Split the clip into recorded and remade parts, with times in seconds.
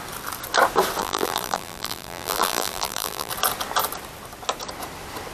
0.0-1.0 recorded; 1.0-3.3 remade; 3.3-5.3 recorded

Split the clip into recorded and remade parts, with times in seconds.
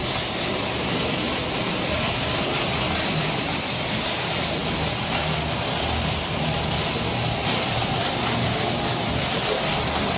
0.0-1.4 remade; 1.4-3.2 recorded; 3.2-4.6 remade; 4.6-5.6 recorded; 5.6-10.2 remade